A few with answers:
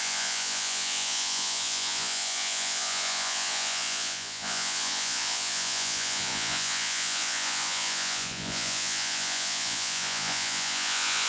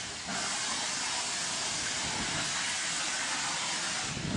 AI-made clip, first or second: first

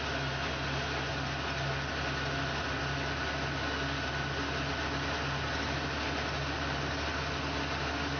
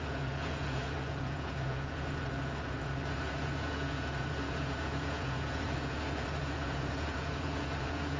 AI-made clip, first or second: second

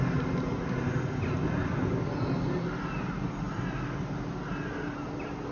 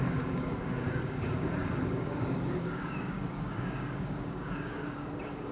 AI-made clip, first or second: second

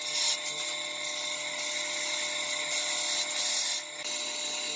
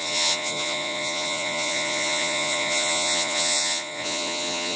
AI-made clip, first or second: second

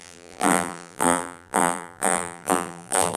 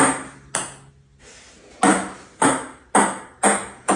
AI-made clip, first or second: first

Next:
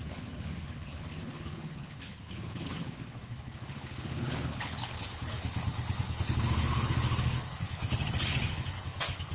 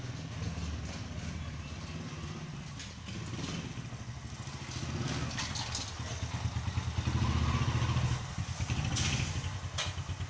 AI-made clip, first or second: first